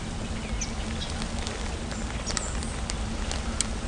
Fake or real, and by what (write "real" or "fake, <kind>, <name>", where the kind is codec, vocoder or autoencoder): real